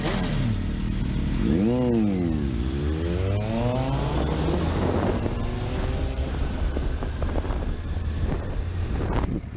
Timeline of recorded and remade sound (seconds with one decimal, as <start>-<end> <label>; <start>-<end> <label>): 0.0-6.0 recorded; 6.0-9.6 remade